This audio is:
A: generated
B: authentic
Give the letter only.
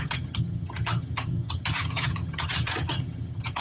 A